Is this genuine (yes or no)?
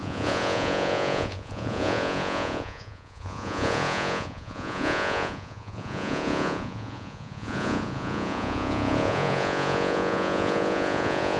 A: no